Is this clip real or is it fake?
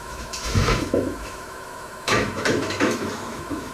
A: fake